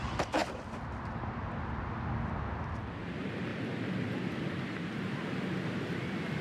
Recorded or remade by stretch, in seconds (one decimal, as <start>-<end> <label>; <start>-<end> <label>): 0.0-0.4 recorded; 0.4-1.6 remade; 1.6-3.5 recorded; 3.5-6.4 remade

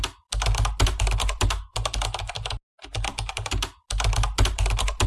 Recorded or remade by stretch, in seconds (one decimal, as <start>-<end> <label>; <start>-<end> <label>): 0.0-5.1 recorded